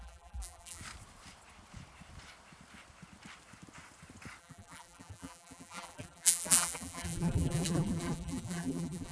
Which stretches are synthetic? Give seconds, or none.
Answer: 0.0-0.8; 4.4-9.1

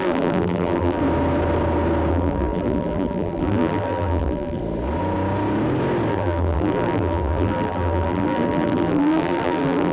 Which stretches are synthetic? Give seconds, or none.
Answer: 0.0-1.0; 2.1-4.6; 6.1-9.9